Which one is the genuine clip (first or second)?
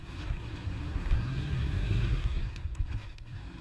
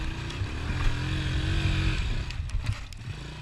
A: second